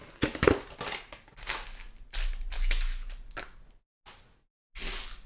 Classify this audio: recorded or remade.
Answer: recorded